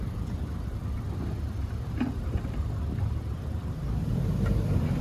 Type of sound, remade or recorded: remade